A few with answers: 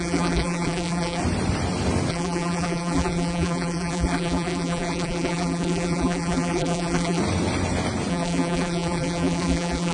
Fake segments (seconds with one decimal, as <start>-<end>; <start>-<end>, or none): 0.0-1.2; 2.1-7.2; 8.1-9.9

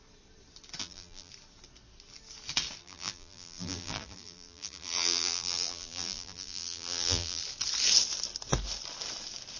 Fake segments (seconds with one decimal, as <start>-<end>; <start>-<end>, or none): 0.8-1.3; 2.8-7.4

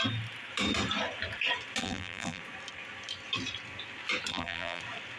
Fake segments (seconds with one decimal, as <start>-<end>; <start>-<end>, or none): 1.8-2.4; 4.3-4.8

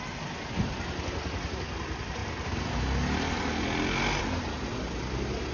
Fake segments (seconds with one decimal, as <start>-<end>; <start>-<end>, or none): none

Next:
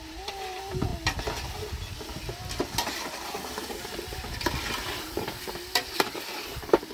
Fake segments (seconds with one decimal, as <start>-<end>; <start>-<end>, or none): 0.0-0.9; 5.0-6.9

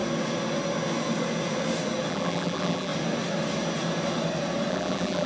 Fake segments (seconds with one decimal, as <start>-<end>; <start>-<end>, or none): 2.1-2.9; 4.7-5.3